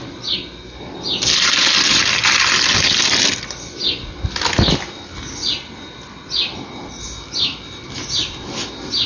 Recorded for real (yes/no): yes